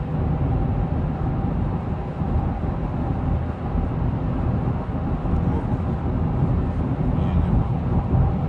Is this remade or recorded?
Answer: recorded